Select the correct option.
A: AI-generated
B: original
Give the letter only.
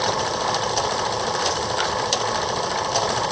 B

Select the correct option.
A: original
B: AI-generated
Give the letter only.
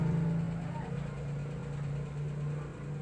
A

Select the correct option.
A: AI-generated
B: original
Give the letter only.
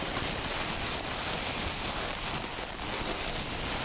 A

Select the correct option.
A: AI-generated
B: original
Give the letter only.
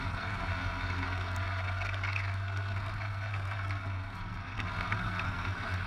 A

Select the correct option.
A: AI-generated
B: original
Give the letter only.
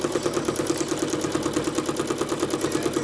B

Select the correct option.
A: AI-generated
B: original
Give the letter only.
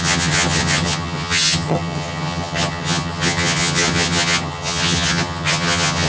A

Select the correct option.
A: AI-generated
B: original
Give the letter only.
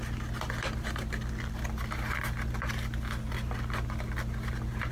B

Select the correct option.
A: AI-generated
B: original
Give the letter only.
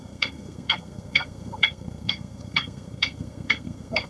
A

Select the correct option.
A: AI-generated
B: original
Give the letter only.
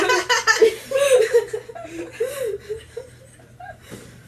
B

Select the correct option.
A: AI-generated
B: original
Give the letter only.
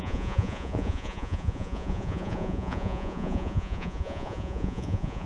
A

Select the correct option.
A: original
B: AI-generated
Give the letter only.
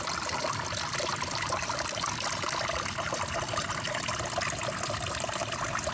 A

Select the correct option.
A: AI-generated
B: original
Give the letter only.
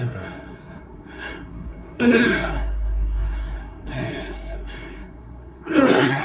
A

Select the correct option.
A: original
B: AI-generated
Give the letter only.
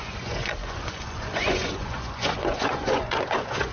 B